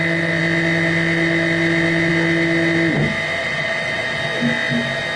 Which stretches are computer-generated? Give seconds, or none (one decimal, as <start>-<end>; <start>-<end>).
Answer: 3.4-4.2